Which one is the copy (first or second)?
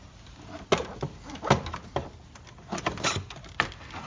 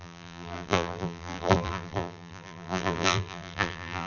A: second